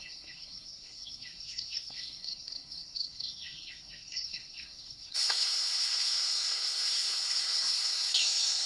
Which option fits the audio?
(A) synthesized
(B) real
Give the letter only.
A